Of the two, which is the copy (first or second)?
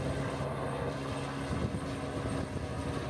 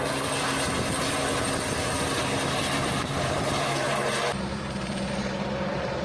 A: second